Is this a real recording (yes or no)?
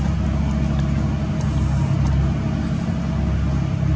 yes